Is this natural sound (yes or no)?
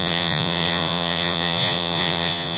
no